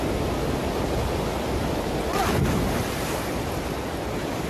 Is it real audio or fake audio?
real